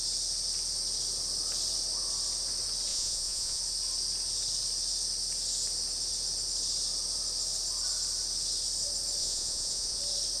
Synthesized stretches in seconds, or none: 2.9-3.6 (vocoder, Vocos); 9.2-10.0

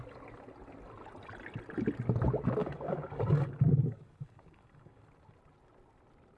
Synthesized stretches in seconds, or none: 2.6-5.0 (codec, DAC)